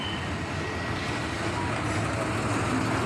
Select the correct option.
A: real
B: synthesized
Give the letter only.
A